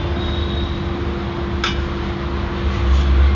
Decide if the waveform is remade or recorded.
recorded